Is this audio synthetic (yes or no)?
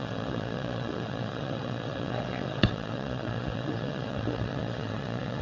yes